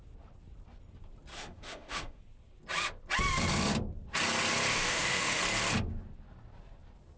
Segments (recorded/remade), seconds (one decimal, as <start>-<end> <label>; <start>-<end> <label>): 0.0-1.3 recorded; 1.3-2.2 remade; 2.2-4.7 recorded; 4.7-5.4 remade; 5.4-7.2 recorded